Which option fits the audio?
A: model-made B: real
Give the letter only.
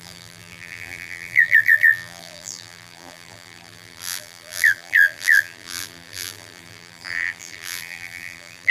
A